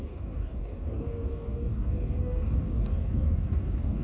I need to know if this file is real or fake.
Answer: fake